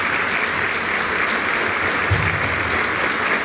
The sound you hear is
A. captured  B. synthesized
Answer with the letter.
A